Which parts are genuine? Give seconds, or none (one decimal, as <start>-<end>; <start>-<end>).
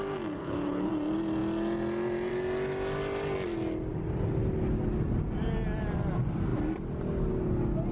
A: 0.0-0.4; 0.9-7.9